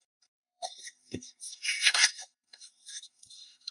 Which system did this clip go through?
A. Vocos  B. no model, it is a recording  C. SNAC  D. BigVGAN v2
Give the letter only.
C